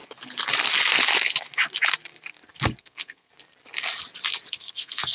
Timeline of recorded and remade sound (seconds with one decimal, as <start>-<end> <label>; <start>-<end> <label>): 0.0-2.8 recorded; 2.8-3.3 remade; 3.3-4.5 recorded; 4.5-5.1 remade

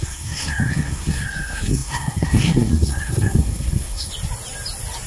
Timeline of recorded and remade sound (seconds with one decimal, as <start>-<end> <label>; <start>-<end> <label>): 0.0-4.1 remade; 4.1-5.1 recorded

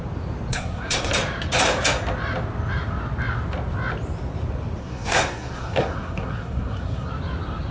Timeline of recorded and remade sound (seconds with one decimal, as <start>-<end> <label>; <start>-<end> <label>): 0.0-0.5 recorded; 0.5-1.1 remade; 1.1-4.8 recorded; 4.8-7.1 remade; 7.1-7.7 recorded